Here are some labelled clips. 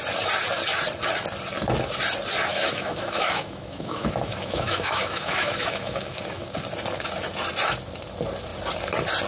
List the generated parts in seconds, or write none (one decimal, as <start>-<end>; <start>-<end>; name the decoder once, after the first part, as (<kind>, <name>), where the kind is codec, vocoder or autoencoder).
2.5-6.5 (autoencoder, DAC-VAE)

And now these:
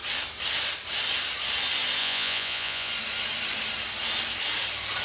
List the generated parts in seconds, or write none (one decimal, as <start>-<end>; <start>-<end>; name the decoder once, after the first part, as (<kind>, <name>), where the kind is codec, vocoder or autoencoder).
2.0-2.9 (vocoder, Vocos)

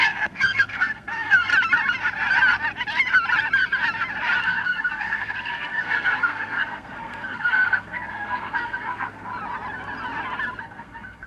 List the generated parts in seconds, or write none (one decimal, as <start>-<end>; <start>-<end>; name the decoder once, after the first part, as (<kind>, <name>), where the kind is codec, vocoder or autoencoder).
0.0-1.5 (codec, SNAC); 4.4-9.3; 10.6-11.3